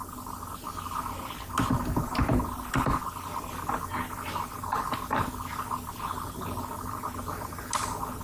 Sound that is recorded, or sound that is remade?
recorded